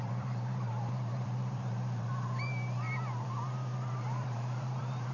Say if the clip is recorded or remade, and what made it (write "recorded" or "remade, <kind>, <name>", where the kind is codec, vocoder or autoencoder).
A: remade, vocoder, BigVGAN v2